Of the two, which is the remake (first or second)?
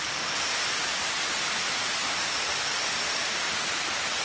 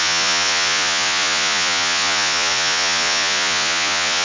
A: second